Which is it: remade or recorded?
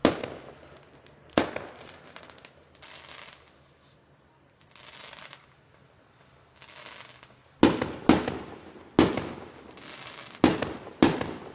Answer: recorded